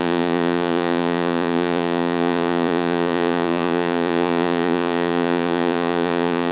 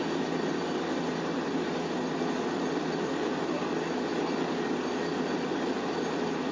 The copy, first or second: first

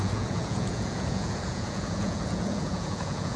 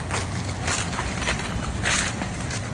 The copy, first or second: first